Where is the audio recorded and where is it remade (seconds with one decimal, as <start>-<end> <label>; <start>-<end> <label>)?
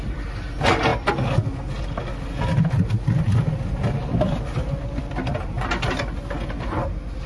0.0-7.3 recorded